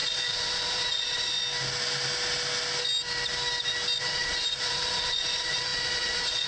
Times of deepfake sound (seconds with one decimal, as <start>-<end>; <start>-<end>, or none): 0.0-1.4; 4.0-6.5